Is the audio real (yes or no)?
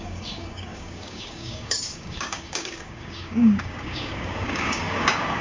no